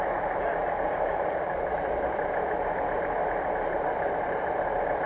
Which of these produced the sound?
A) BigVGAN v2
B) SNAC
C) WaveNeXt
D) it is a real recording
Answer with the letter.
D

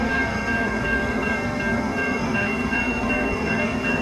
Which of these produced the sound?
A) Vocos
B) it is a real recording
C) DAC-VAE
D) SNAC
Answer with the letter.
D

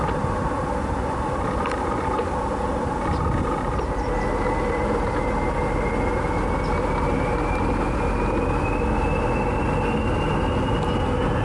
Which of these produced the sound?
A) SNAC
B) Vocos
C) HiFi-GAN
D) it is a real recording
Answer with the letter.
D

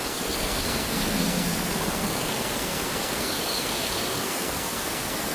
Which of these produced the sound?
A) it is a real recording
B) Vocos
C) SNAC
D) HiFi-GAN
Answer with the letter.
C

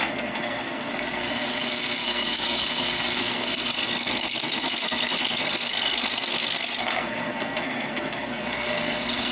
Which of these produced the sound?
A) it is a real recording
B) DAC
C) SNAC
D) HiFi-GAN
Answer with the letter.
C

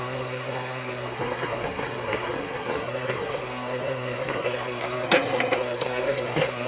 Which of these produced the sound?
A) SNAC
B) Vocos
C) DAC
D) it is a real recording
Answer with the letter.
A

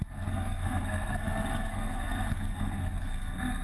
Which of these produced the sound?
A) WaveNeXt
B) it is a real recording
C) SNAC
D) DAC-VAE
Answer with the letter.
C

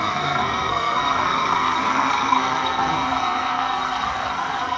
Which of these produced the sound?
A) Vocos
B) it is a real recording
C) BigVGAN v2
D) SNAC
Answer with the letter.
D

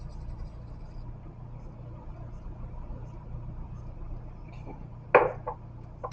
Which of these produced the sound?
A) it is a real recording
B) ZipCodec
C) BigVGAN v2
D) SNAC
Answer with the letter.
A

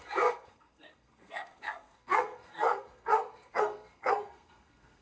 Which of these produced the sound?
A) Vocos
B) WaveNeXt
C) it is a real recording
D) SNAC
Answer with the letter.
D